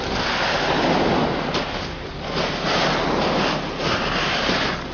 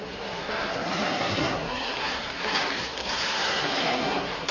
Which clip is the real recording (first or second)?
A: first